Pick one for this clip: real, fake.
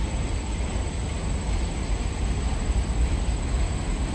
real